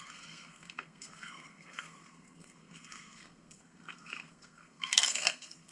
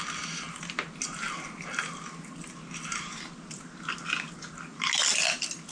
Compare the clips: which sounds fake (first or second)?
first